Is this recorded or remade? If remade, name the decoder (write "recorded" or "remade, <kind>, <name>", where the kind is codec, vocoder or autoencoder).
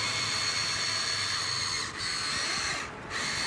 recorded